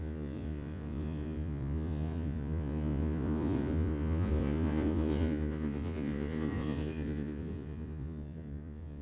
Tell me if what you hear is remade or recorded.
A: remade